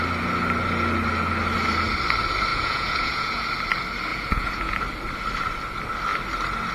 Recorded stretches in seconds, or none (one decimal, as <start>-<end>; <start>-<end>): 0.0-2.5; 3.5-4.1; 4.8-6.7